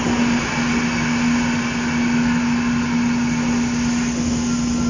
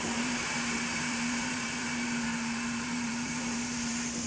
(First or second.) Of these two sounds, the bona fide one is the first